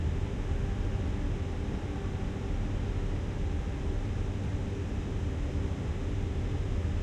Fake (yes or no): no